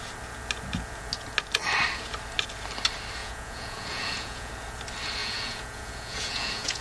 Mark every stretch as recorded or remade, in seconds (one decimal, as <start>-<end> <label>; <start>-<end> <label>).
0.0-3.2 recorded; 3.2-4.5 remade; 4.5-5.2 recorded; 5.2-6.8 remade